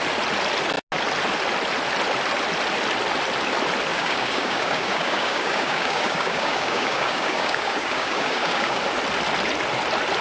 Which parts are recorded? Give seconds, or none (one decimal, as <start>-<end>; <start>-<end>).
0.0-3.9; 8.8-10.2

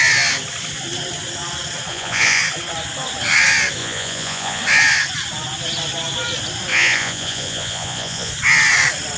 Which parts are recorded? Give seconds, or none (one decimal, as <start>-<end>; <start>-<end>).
0.0-1.9; 2.4-3.8; 4.6-6.7; 8.3-9.2